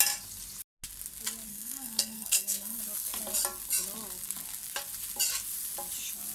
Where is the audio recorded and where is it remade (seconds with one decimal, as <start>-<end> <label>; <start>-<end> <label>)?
0.0-1.5 recorded; 1.5-2.8 remade; 2.8-6.3 recorded